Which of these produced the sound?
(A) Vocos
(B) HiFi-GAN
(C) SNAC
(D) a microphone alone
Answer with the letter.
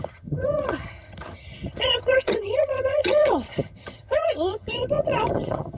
B